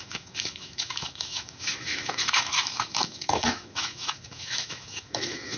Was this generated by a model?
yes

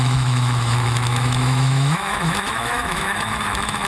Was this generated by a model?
yes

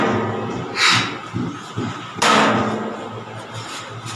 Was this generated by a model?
no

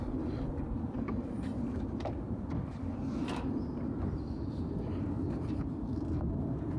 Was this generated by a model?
no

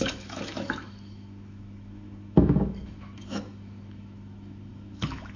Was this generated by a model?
yes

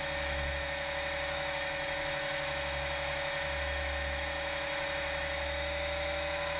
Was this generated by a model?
yes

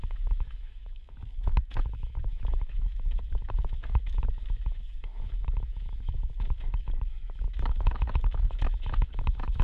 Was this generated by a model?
yes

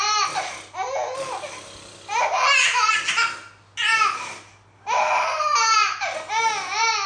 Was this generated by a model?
no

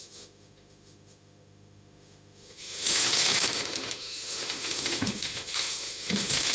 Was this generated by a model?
yes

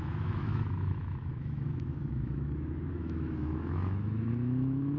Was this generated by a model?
yes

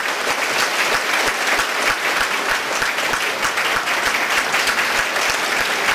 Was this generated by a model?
no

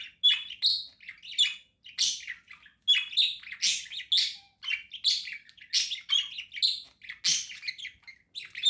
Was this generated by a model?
no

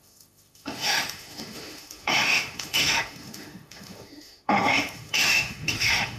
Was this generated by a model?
yes